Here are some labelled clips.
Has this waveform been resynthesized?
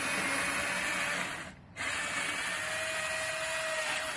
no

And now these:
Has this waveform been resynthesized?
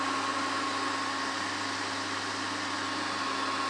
no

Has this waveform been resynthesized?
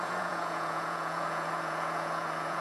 yes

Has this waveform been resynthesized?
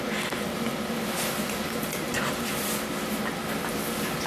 no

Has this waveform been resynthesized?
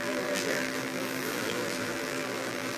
yes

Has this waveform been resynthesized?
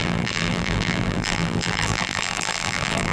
yes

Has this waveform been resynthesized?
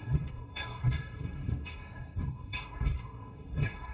yes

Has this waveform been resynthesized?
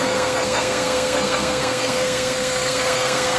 yes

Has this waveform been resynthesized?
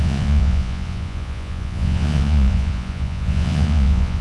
yes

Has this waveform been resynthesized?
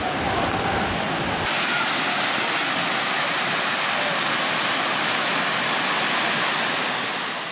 no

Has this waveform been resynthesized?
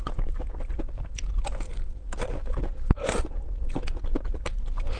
no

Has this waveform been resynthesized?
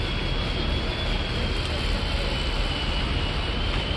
no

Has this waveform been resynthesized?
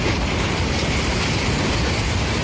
yes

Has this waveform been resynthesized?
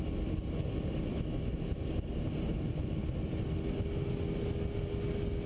no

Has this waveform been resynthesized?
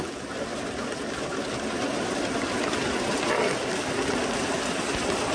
no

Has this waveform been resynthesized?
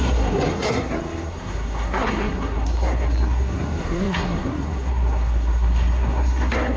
yes